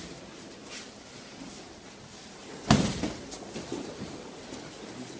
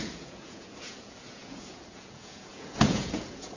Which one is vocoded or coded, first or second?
second